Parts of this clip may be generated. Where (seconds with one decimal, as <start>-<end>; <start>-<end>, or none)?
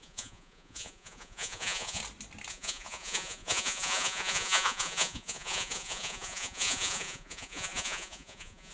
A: 0.0-2.0; 2.5-8.7